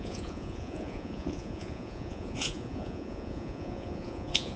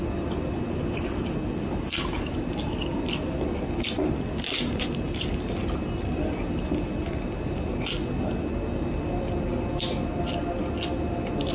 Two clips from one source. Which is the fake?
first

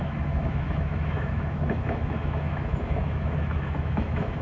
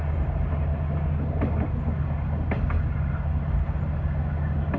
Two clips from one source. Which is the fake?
first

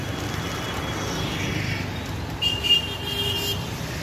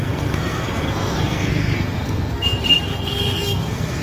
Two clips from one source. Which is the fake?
second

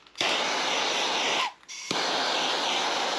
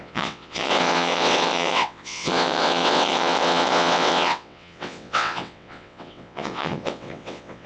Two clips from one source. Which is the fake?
second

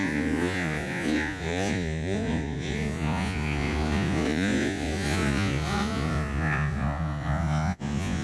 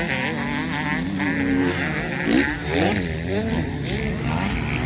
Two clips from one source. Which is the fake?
first